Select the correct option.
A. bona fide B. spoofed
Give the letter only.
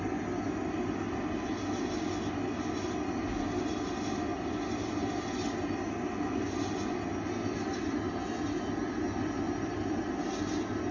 A